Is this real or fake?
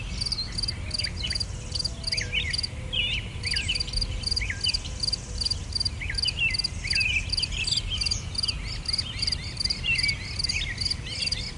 real